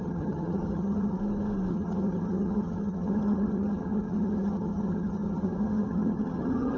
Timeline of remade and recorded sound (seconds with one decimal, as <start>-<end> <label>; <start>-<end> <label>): 0.0-1.2 remade; 1.2-1.7 recorded; 1.7-6.8 remade